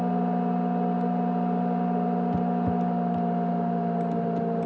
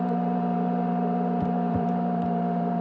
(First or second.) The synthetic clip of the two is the second